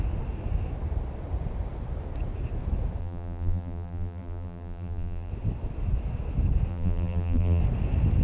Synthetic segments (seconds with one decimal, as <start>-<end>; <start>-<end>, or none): 3.0-5.3; 6.7-7.6